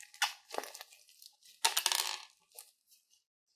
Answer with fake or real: real